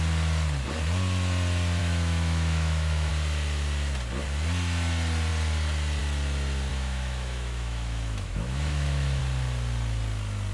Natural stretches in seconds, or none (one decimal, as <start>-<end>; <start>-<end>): 0.0-1.8; 3.1-6.7; 9.2-10.5